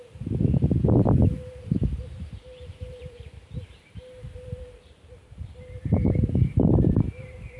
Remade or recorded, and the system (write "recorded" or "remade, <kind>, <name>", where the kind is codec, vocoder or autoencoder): remade, vocoder, BigVGAN v2